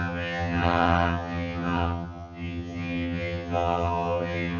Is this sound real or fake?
fake